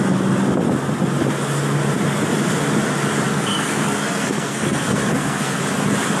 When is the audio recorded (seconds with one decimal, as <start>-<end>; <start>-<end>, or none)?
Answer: 0.0-3.3; 5.6-6.2